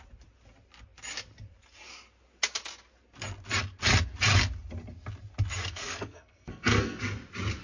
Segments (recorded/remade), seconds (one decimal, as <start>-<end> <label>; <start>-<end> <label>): 0.0-5.6 recorded; 5.6-7.0 remade; 7.0-7.6 recorded